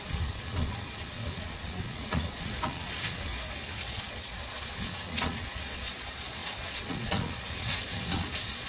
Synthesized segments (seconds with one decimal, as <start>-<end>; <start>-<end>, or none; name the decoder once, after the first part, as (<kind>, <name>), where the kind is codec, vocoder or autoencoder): 0.0-3.3 (vocoder, Vocos); 3.9-8.7